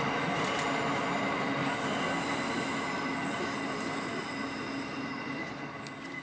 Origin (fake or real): real